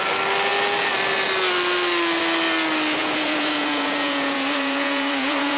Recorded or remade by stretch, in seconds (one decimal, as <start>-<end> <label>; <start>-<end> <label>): 0.0-3.0 recorded; 3.0-5.6 remade